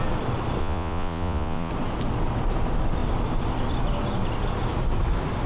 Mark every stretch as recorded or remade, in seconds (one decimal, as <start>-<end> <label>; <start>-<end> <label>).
0.0-0.6 recorded; 0.6-1.7 remade; 1.7-5.5 recorded